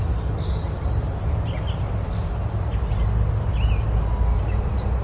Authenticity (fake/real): real